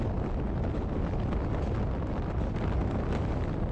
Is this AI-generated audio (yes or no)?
no